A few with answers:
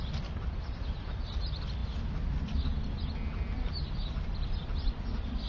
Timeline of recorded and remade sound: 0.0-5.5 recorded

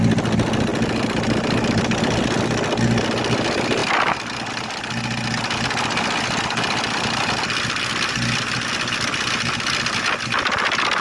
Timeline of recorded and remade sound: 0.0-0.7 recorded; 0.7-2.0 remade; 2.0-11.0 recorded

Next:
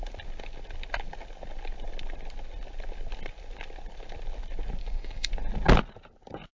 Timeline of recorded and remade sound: 0.0-4.8 recorded; 4.8-5.3 remade; 5.3-6.6 recorded

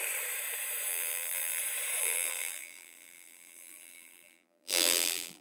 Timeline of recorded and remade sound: 0.0-0.9 recorded; 0.9-1.6 remade; 1.6-2.0 recorded; 2.0-5.4 remade

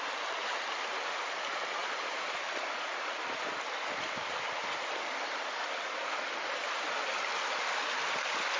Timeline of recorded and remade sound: 0.0-8.6 recorded

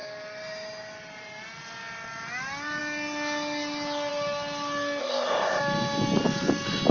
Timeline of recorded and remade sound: 0.0-5.0 recorded; 5.0-5.6 remade; 5.6-6.9 recorded